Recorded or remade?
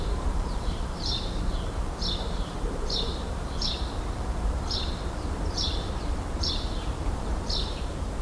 remade